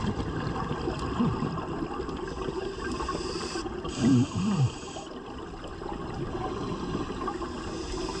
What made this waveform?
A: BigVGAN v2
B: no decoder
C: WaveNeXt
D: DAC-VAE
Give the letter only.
B